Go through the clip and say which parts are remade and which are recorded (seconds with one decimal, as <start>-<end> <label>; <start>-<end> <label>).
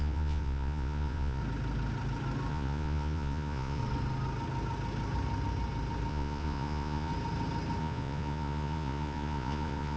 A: 0.0-1.4 remade; 1.4-2.5 recorded; 2.5-3.8 remade; 3.8-6.1 recorded; 6.1-7.1 remade; 7.1-7.8 recorded; 7.8-10.0 remade